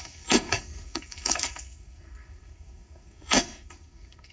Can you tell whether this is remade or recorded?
remade